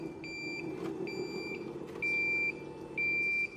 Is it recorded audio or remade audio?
recorded